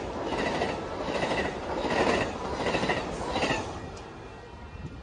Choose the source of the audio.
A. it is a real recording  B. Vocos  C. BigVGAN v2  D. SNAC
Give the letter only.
A